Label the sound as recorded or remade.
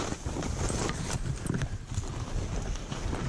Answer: recorded